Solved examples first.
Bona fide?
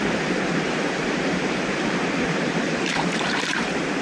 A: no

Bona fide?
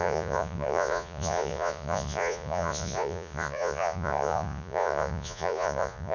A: no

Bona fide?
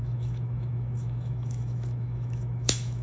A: no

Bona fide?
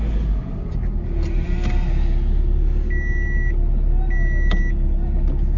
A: yes